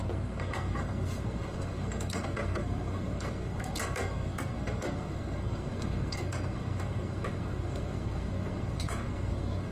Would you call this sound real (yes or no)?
no